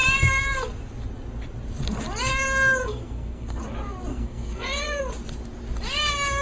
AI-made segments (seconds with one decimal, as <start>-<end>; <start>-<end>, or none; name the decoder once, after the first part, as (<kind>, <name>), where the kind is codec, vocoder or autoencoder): 2.8-3.6 (codec, SNAC); 4.1-5.0